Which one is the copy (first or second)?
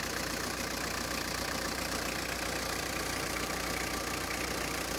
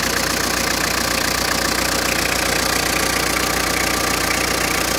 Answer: first